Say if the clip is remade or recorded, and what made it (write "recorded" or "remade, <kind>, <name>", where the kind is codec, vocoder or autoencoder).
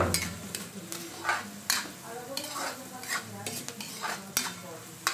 recorded